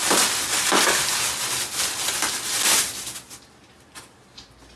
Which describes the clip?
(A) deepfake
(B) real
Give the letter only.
B